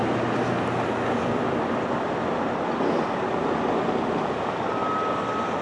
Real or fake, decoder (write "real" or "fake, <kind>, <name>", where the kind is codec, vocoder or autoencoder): real